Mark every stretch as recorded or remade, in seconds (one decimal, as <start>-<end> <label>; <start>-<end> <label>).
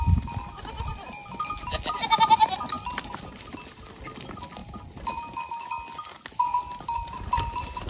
0.0-0.9 recorded; 0.9-3.5 remade; 3.5-4.6 recorded; 4.6-5.2 remade; 5.2-7.9 recorded